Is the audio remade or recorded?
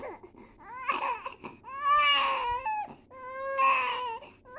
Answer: recorded